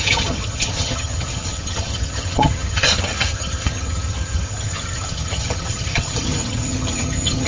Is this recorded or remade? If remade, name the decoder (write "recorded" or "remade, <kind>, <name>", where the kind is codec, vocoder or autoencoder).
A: remade, vocoder, HiFi-GAN